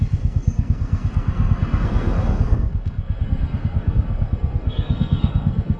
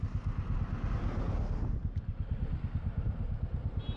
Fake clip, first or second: first